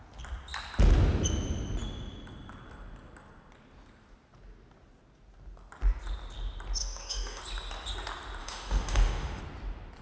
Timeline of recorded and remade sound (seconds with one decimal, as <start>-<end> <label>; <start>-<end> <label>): 0.0-6.8 recorded; 6.8-7.4 remade; 7.4-8.4 recorded; 8.4-9.4 remade; 9.4-10.0 recorded